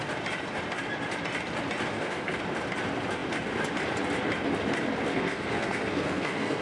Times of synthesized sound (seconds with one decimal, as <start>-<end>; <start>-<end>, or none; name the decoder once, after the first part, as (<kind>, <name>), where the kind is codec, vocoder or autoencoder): 1.9-2.4 (codec, SNAC); 5.1-6.6